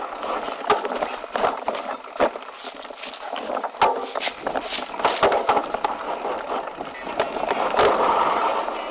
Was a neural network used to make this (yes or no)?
no